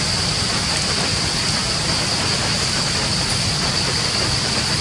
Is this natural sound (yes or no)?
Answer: yes